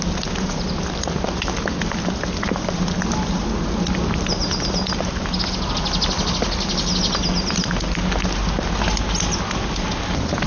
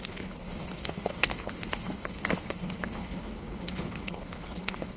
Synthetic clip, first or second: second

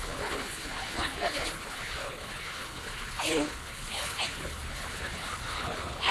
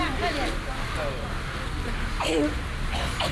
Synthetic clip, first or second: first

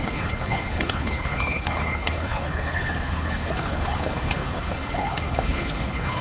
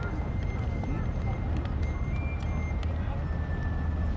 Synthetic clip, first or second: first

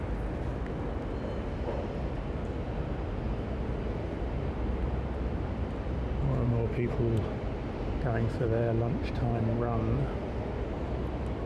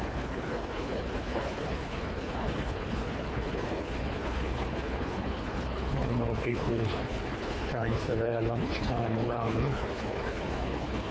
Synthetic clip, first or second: second